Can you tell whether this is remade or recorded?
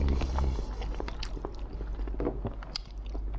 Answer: recorded